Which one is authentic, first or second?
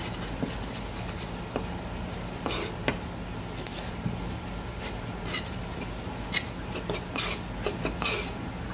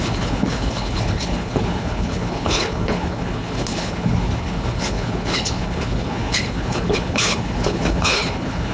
first